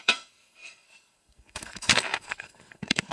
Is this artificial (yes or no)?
yes